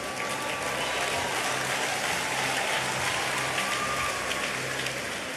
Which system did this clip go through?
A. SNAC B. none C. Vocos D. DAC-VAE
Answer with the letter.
B